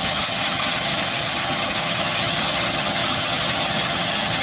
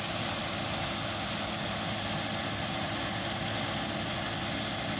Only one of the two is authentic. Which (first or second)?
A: second